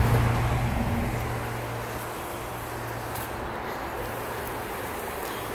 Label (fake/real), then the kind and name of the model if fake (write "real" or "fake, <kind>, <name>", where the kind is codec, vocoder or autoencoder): real